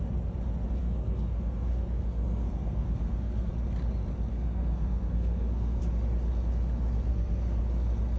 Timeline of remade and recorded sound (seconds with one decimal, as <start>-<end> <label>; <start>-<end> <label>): 0.0-0.8 recorded; 0.8-3.5 remade; 3.5-4.3 recorded; 4.3-5.8 remade; 5.8-7.1 recorded; 7.1-7.6 remade; 7.6-8.2 recorded